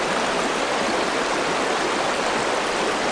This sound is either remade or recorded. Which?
recorded